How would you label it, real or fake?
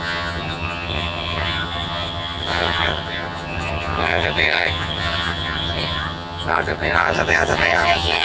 fake